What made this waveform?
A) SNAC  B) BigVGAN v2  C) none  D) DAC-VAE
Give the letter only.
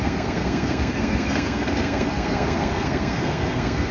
A